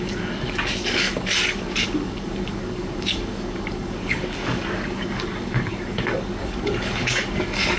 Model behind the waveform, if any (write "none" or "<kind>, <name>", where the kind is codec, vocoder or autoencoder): codec, DAC